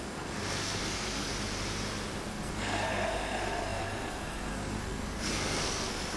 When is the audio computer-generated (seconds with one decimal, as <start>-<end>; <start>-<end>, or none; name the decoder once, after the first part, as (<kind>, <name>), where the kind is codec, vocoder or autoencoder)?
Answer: 0.0-1.3 (codec, SNAC); 2.3-6.2